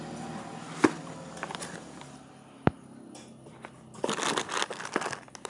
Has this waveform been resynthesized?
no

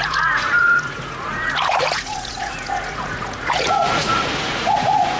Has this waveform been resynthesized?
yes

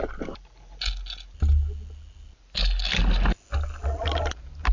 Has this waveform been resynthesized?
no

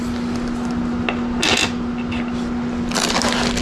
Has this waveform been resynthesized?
no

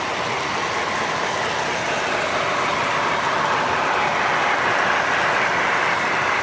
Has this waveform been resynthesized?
no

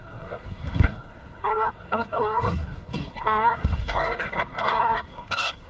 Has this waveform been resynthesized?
yes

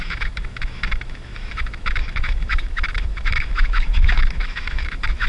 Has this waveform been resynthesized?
yes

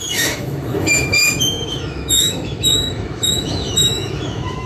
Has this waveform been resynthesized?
yes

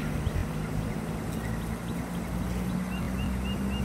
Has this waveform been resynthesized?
no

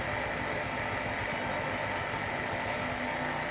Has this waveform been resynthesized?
no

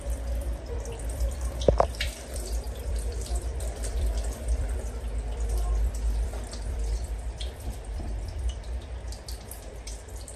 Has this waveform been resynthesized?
yes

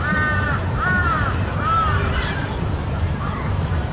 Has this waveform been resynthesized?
yes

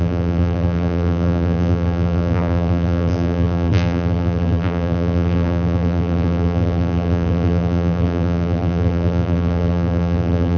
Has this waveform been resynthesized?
yes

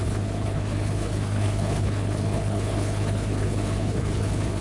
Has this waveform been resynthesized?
yes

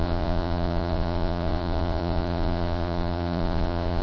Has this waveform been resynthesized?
yes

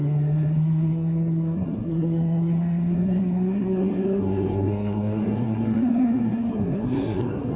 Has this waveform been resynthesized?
yes